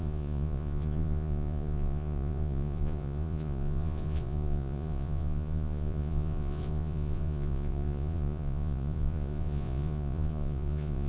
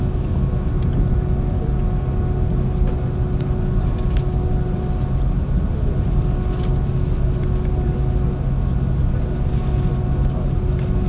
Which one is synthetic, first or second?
first